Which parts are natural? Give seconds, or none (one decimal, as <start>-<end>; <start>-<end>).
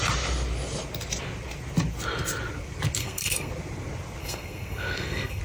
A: 0.0-3.0; 3.5-4.2